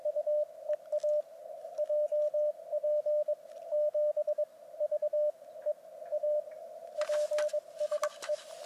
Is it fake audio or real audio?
real